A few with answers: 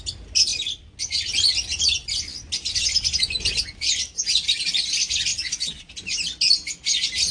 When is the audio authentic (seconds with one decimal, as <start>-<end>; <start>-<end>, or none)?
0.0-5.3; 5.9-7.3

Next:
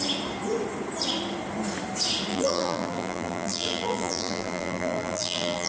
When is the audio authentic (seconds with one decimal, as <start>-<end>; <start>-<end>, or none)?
0.0-2.3

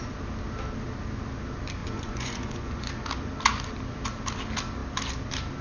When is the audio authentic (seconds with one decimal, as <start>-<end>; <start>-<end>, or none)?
0.0-1.8; 2.9-5.6

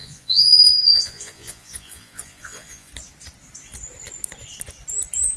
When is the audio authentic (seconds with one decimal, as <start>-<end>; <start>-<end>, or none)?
2.9-5.4

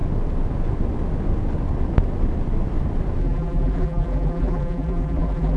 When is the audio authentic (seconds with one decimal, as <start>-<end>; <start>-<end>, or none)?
0.0-3.2

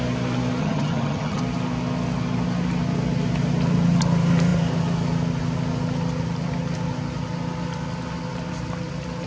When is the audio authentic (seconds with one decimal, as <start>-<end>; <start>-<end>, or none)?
0.0-0.6; 1.4-9.3

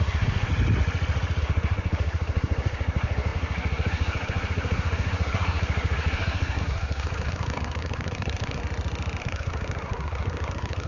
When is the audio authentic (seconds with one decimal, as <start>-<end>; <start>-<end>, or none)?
0.5-1.4; 8.6-9.2